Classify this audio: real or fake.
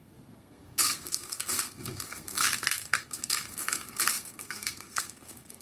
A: fake